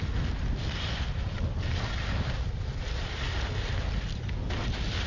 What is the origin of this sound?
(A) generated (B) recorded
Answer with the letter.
B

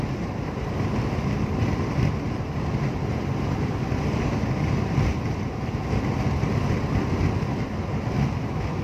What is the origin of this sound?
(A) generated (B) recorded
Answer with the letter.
B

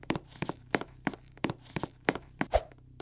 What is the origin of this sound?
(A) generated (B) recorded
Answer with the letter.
A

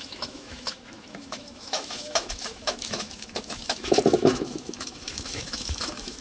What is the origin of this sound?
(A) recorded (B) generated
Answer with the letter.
B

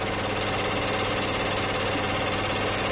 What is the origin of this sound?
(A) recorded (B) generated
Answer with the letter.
A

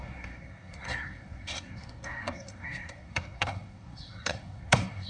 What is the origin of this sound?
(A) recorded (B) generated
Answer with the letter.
B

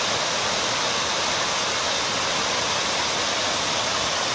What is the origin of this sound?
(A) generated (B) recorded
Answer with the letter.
B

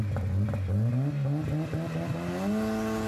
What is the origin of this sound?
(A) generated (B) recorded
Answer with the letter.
B